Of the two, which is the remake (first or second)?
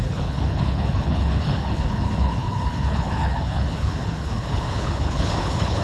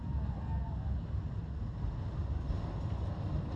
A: first